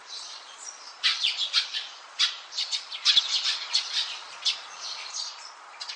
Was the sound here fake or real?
fake